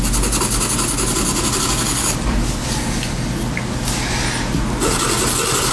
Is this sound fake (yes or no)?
no